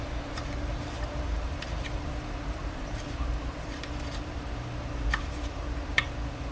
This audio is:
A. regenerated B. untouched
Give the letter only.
A